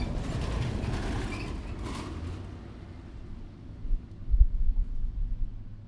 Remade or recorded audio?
recorded